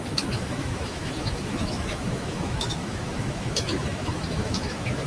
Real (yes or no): no